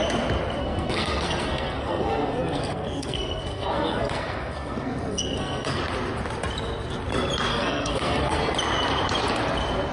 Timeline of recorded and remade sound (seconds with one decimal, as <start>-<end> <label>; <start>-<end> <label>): 0.0-0.6 recorded; 0.6-5.8 remade; 5.8-7.5 recorded; 7.5-8.4 remade; 8.4-9.9 recorded